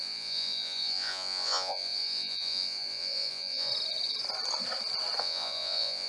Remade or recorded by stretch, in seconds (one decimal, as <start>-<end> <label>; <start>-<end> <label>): 0.0-3.7 remade; 3.7-5.2 recorded; 5.2-6.1 remade